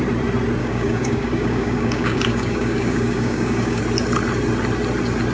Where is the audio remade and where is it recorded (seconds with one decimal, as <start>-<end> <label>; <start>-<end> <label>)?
0.0-0.6 recorded; 0.6-3.8 remade; 3.8-5.3 recorded